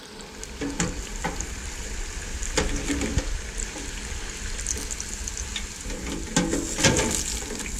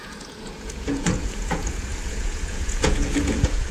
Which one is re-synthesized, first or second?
second